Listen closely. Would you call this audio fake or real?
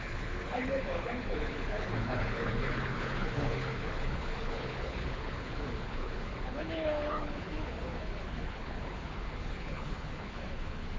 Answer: fake